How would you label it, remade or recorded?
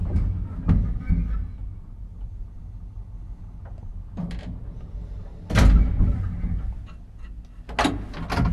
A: recorded